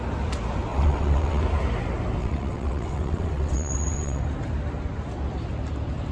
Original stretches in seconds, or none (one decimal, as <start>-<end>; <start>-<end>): 0.0-0.7; 1.4-2.2; 4.2-6.1